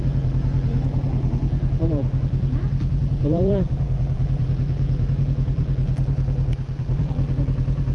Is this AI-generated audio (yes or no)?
yes